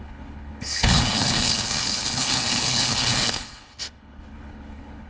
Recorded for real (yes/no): no